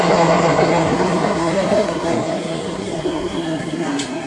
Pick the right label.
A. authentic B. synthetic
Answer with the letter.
B